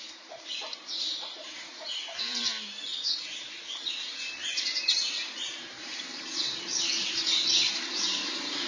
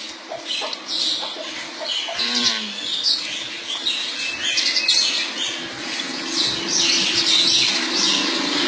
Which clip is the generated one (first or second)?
first